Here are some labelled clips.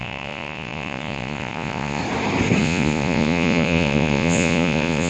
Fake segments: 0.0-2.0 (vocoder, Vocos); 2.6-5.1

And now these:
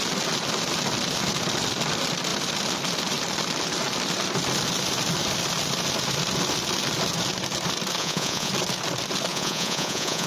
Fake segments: 8.0-8.5 (vocoder, Vocos); 9.3-10.3